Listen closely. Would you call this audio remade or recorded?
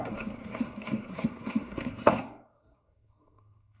remade